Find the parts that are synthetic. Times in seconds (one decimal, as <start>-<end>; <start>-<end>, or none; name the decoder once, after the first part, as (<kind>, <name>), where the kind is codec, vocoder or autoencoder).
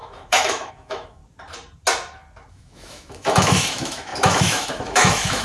0.0-1.2 (autoencoder, DAC-VAE); 2.5-5.4